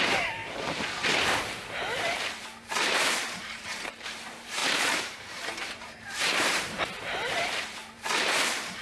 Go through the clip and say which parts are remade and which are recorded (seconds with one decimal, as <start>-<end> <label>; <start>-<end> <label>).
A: 0.0-0.4 remade; 0.4-2.6 recorded; 2.6-8.8 remade